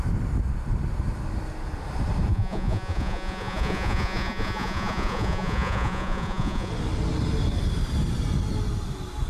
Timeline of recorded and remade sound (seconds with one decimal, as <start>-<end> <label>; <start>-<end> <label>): 0.0-2.3 recorded; 2.3-6.7 remade; 6.7-9.3 recorded